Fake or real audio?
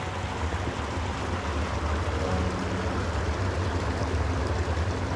real